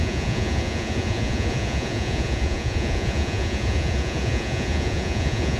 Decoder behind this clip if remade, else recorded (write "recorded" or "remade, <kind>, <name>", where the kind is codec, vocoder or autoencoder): remade, vocoder, Vocos